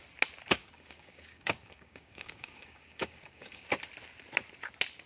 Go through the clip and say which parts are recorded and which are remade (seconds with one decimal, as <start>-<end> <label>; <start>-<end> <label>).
0.0-0.6 recorded; 0.6-3.7 remade; 3.7-5.1 recorded